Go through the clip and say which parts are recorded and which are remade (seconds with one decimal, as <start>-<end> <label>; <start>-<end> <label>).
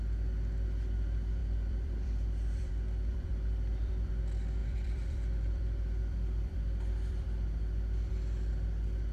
0.0-1.4 recorded; 1.4-2.7 remade; 2.7-3.1 recorded; 3.1-4.1 remade; 4.1-4.6 recorded; 4.6-8.1 remade; 8.1-9.1 recorded